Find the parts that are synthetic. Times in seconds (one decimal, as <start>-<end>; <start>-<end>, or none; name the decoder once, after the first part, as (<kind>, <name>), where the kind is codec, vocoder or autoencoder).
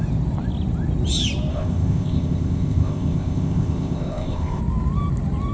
1.5-4.6 (codec, ZipCodec)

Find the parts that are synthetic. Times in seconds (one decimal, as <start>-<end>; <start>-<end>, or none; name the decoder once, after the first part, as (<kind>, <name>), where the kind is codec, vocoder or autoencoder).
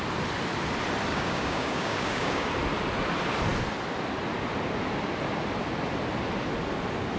1.1-2.5 (codec, DAC)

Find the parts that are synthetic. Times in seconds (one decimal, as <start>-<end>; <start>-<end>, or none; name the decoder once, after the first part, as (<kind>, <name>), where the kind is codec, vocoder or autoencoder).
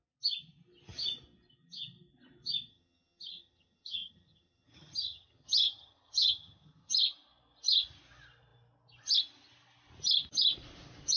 2.7-6.9 (vocoder, HiFi-GAN)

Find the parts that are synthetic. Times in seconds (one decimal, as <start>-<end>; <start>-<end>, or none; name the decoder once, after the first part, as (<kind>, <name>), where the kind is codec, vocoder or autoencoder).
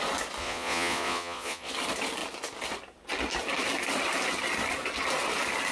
0.4-1.7 (vocoder, Vocos)